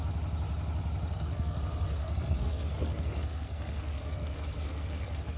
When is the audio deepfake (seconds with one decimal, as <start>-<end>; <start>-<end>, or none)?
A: 1.1-1.6; 2.0-5.4